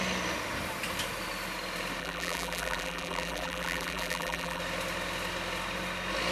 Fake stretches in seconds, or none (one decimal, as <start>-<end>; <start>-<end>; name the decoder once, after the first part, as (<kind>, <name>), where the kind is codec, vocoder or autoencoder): 2.0-4.6 (vocoder, BigVGAN v2)